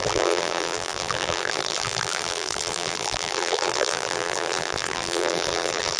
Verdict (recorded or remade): remade